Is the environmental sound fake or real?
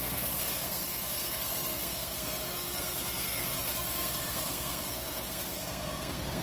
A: fake